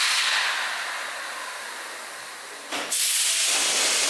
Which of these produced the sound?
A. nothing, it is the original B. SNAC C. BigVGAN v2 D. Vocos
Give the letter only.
A